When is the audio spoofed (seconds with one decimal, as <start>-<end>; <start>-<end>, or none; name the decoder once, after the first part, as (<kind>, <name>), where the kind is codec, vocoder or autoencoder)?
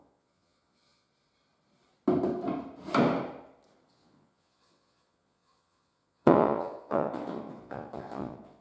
0.0-1.1 (vocoder, Vocos); 3.9-8.6